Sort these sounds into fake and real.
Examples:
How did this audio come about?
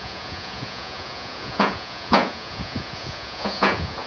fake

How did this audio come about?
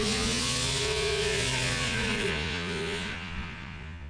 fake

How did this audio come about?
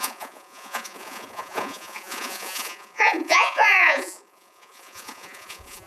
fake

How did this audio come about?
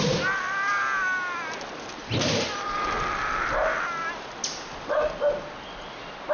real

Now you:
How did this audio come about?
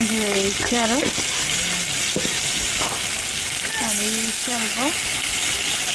real